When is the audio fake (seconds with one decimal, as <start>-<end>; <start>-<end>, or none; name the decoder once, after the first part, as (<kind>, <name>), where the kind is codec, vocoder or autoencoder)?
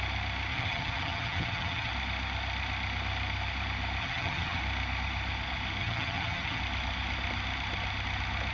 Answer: 0.5-1.9 (vocoder, HiFi-GAN); 4.0-4.6; 5.8-6.6